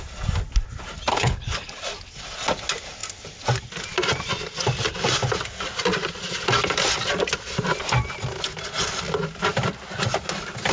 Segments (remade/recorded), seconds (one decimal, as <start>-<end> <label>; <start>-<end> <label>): 0.0-1.1 recorded; 1.1-1.7 remade; 1.7-10.7 recorded